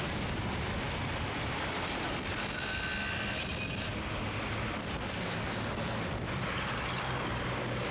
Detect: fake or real real